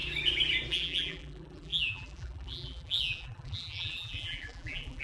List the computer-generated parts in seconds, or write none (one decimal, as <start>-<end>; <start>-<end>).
0.7-5.0